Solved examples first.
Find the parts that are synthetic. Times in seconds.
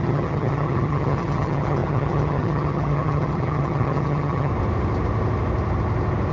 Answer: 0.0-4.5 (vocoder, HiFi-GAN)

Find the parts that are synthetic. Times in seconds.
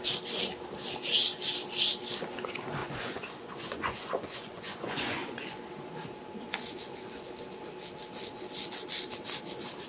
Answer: 2.8-5.6 (vocoder, Vocos); 6.4-7.6